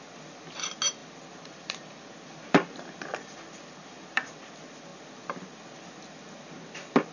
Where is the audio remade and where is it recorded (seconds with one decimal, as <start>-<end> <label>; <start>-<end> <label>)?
0.0-1.0 recorded; 1.0-4.3 remade; 4.3-7.1 recorded